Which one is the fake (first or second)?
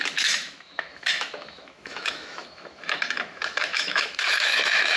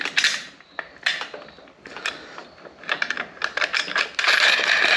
first